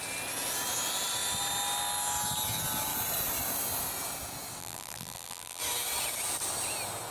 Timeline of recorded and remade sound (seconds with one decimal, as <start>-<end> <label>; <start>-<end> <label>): 0.0-4.6 recorded; 4.6-5.6 remade; 5.6-7.1 recorded